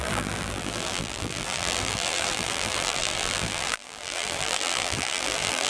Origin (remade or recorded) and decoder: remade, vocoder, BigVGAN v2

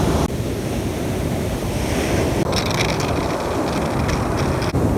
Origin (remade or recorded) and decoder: recorded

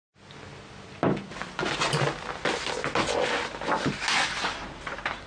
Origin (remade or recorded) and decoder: recorded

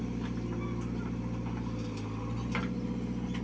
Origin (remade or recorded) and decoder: recorded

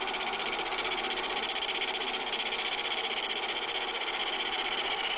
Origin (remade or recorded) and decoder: remade, vocoder, BigVGAN v2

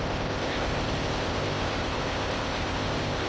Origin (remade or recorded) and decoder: remade, codec, ZipCodec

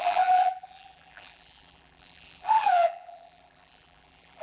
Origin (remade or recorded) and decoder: remade, vocoder, BigVGAN v2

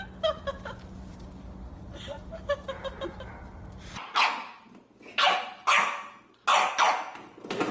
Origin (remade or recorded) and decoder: recorded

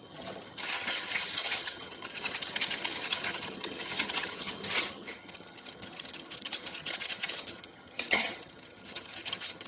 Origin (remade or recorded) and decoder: remade, vocoder, HiFi-GAN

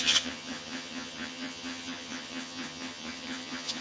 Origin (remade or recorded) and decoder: remade, vocoder, HiFi-GAN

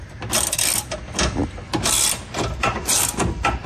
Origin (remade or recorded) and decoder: recorded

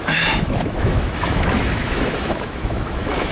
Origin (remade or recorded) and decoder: remade, autoencoder, DAC-VAE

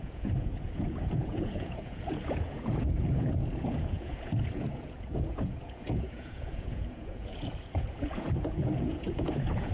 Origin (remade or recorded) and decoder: remade, vocoder, Vocos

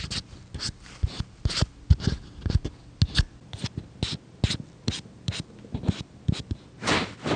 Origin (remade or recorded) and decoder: recorded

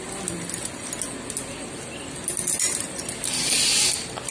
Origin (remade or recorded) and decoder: recorded